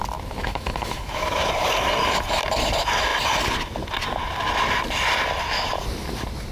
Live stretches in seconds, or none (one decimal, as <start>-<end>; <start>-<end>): 0.0-0.4; 1.5-6.5